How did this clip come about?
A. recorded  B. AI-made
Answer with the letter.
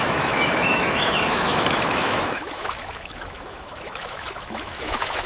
B